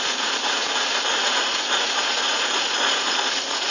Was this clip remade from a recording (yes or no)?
yes